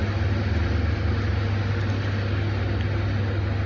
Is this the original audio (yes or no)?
yes